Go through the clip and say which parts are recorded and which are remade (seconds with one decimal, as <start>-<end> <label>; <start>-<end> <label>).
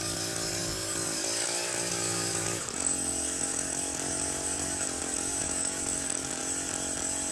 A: 0.0-6.4 remade; 6.4-7.3 recorded